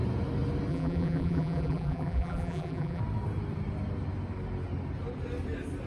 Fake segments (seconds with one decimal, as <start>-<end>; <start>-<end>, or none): 0.7-3.0